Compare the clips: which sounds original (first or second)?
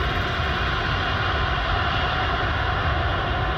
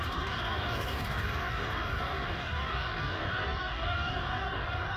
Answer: first